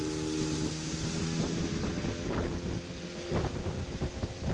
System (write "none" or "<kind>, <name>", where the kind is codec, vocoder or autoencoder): none